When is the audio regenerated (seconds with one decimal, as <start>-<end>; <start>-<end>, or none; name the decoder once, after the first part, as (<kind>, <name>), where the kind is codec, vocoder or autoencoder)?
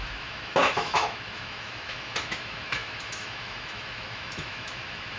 0.0-5.2 (autoencoder, DAC-VAE)